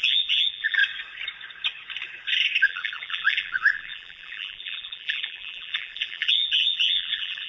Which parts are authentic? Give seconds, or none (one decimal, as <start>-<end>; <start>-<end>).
0.8-2.6